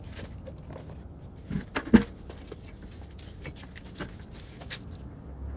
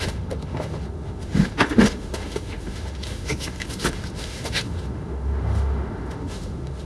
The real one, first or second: first